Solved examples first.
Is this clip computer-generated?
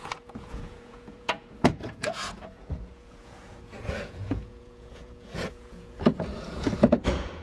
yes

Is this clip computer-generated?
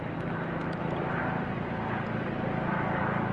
no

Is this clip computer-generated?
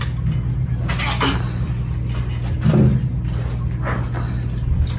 no